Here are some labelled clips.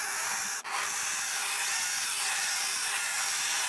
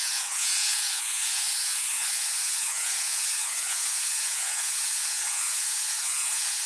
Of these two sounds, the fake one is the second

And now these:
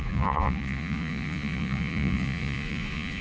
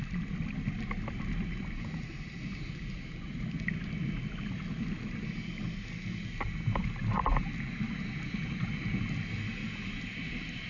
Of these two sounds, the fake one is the first